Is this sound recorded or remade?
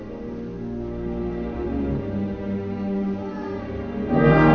recorded